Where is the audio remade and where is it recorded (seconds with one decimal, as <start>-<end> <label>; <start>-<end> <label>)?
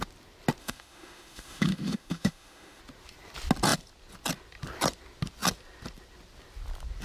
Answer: 0.0-0.6 recorded; 0.6-2.8 remade; 2.8-7.0 recorded